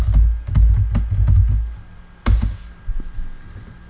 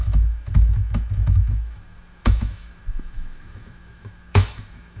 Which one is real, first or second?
first